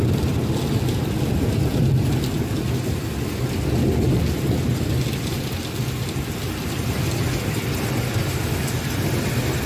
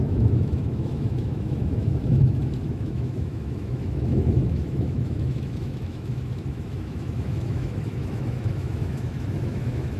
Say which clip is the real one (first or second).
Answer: first